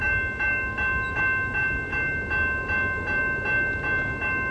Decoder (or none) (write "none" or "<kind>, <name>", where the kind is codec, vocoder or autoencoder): none